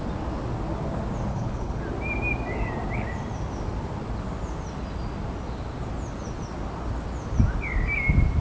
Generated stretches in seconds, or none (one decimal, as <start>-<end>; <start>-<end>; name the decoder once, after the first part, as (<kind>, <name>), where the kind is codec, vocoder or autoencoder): 1.3-1.8 (codec, HILCodec)